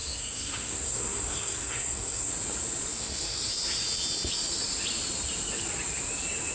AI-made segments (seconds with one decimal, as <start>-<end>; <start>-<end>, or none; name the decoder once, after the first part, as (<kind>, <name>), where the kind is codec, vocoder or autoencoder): 0.0-2.3 (codec, SNAC); 3.0-3.5

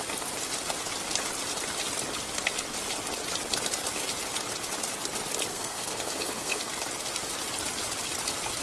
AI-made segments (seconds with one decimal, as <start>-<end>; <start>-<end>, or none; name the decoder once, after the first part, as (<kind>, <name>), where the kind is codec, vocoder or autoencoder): 5.5-6.7 (codec, SNAC)

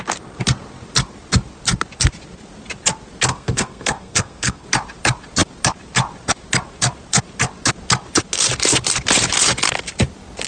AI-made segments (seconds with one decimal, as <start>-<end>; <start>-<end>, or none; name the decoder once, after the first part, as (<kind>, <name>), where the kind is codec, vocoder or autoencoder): 3.3-4.6 (codec, SNAC)

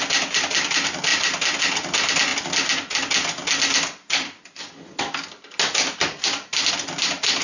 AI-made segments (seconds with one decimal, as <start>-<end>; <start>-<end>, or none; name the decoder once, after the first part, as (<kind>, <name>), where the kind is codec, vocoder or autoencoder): none